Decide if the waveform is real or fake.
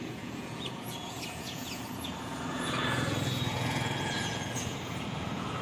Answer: fake